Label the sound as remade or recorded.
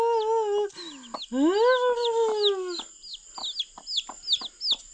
recorded